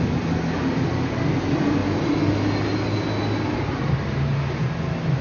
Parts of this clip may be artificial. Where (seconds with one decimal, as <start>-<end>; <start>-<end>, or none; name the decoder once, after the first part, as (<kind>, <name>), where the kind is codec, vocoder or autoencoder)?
none